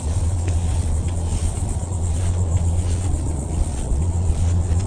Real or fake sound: fake